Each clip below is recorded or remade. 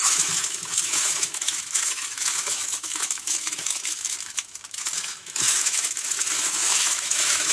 remade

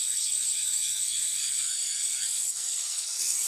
remade